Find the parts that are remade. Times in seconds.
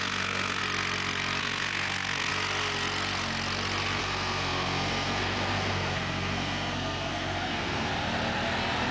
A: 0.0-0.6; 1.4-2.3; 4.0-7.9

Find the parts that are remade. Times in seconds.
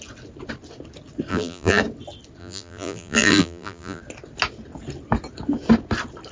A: 1.3-1.8; 2.4-4.0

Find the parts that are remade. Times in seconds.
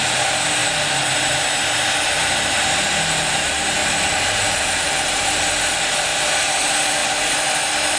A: 3.8-5.5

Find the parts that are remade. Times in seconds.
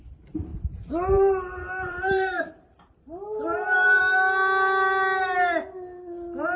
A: 0.5-4.0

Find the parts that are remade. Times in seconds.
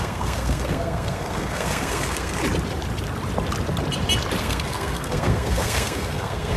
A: 0.0-2.4; 4.4-6.6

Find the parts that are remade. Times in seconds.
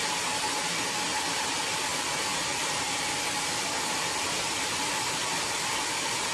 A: 2.3-5.8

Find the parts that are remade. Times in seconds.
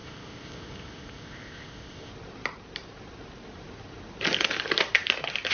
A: 0.0-2.1